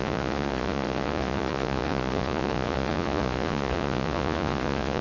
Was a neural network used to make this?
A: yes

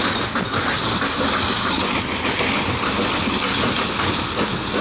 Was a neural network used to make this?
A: no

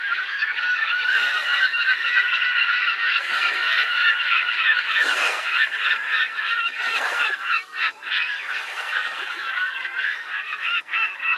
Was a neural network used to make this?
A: yes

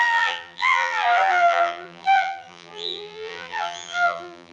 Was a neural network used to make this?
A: yes